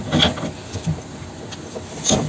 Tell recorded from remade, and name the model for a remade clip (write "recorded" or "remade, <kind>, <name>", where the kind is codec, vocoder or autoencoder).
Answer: recorded